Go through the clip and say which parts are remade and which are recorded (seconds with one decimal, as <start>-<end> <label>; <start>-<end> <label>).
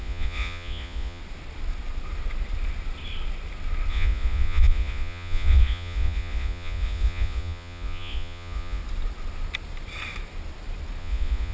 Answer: 0.0-1.2 remade; 1.2-3.9 recorded; 3.9-8.8 remade; 8.8-11.0 recorded; 11.0-11.5 remade